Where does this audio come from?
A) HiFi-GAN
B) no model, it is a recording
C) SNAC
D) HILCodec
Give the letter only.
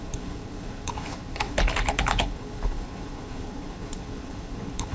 D